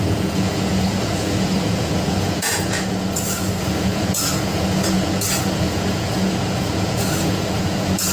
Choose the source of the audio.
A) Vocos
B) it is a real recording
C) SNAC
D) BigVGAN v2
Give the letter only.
A